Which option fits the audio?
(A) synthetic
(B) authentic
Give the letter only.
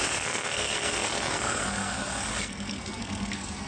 A